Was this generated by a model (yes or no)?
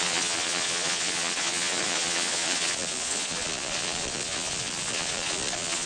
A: yes